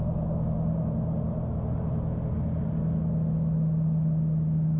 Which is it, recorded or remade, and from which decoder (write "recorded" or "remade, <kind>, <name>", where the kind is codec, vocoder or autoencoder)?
recorded